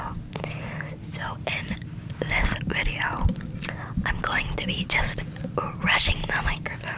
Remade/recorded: recorded